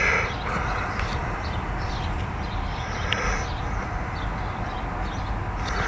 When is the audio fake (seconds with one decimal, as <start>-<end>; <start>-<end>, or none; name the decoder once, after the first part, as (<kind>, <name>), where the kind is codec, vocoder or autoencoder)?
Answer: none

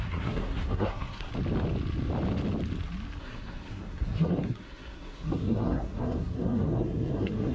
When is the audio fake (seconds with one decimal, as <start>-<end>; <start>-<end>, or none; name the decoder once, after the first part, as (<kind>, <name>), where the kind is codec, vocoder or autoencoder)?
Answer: 0.0-1.3 (codec, SNAC); 3.2-7.5

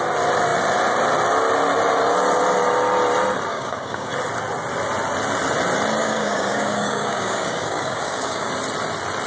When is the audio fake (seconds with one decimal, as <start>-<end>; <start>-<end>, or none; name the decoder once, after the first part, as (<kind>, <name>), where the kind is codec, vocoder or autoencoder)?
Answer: 3.5-4.1 (codec, DAC); 6.0-8.5

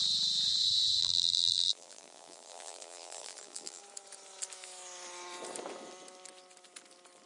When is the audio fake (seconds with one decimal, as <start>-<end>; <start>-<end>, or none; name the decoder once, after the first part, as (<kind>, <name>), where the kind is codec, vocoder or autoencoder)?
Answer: 1.0-3.8 (vocoder, BigVGAN v2)

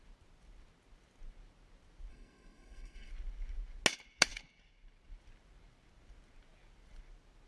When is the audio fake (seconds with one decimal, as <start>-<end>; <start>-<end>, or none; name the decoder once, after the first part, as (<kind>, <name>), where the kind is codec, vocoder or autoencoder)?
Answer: 2.1-3.1 (codec, SNAC)